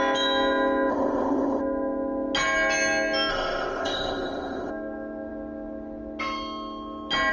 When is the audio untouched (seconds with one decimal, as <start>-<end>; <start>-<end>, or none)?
0.0-0.9; 1.6-3.3; 4.7-7.3